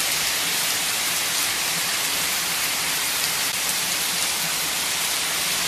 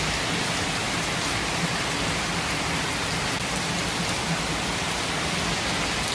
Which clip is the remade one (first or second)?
first